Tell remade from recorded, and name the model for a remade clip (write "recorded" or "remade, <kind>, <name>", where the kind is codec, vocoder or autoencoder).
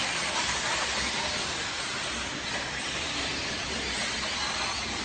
remade, vocoder, BigVGAN v2